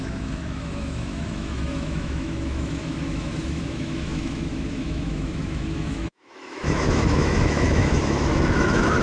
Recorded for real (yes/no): no